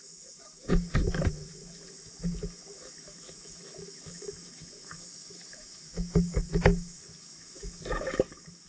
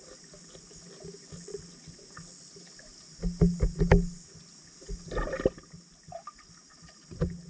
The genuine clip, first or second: second